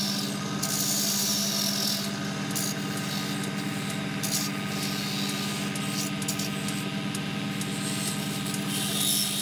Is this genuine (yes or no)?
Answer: yes